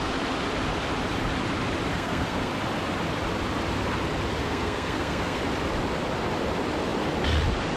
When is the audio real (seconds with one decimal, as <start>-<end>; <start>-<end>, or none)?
0.0-1.9; 2.5-4.4; 5.4-7.8